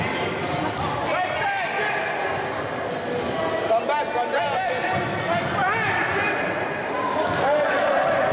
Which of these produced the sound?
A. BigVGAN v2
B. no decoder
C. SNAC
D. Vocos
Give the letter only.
B